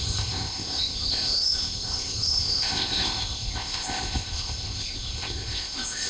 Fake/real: fake